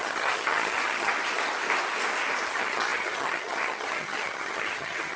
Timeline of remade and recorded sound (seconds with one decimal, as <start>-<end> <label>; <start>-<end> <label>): 0.0-1.1 remade; 1.1-2.5 recorded; 2.5-5.2 remade